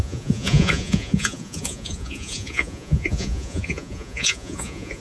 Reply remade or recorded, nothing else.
remade